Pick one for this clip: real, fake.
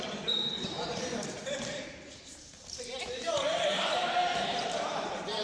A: fake